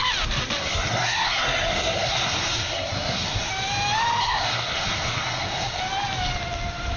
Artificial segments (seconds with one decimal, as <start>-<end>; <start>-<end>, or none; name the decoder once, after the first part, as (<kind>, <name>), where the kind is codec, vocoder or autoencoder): 0.6-3.5 (codec, SNAC); 4.2-5.8